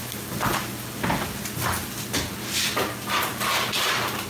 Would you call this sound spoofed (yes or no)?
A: no